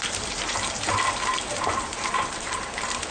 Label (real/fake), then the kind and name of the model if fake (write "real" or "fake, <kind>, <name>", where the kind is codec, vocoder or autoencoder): fake, vocoder, BigVGAN v2